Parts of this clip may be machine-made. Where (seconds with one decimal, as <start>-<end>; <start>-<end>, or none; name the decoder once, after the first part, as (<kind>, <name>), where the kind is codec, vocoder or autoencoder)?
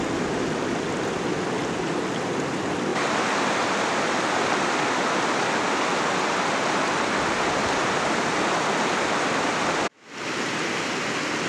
none